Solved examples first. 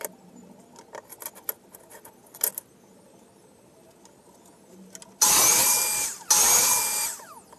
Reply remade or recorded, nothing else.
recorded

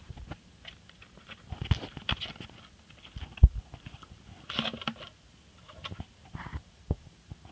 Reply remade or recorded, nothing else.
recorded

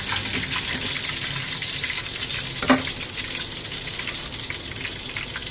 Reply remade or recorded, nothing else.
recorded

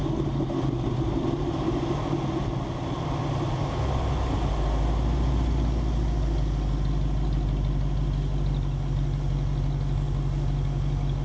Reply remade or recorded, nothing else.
recorded